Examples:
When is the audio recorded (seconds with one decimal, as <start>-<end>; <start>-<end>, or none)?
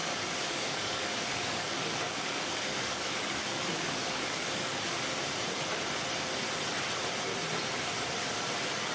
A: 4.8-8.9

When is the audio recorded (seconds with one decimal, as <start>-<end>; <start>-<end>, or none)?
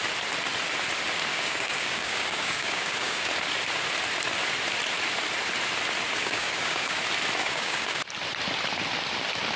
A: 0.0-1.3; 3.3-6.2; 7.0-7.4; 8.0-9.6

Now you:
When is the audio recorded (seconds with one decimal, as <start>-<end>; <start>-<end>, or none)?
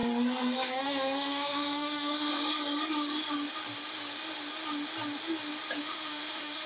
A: 0.0-0.7; 2.3-5.8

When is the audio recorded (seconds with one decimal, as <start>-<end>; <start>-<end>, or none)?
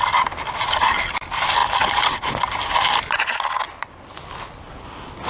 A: 0.0-5.3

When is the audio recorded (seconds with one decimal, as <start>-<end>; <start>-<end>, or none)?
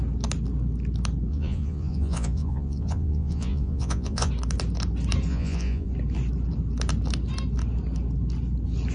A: 0.0-1.3; 4.3-5.3; 5.9-8.9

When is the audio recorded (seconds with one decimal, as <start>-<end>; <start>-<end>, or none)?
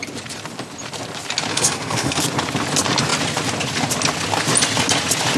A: 0.0-1.5; 2.2-5.4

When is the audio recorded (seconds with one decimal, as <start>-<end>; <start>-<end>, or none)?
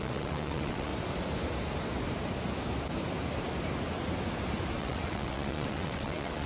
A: 0.9-4.8